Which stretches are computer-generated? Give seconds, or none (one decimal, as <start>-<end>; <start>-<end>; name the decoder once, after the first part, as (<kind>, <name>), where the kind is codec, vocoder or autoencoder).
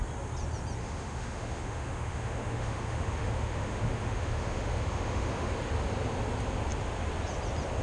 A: 0.8-5.5 (autoencoder, DAC-VAE)